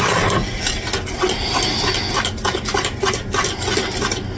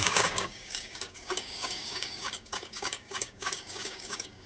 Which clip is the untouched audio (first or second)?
first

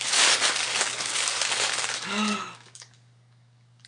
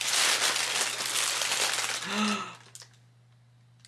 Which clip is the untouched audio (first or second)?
second